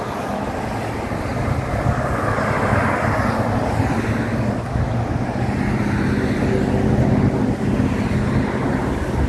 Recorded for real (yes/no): yes